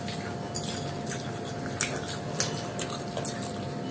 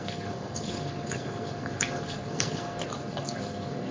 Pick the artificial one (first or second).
second